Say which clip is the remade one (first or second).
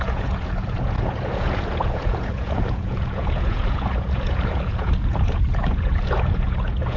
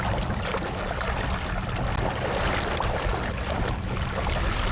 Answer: first